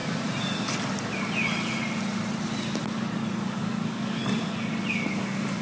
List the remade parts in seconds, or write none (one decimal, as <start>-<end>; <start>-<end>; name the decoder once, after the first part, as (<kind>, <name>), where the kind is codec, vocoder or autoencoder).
3.4-4.2 (codec, DAC); 4.9-5.6